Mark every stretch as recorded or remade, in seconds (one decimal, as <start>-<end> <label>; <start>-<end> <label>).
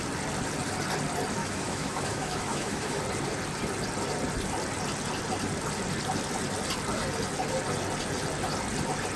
0.0-1.4 recorded; 1.4-3.0 remade; 3.0-9.2 recorded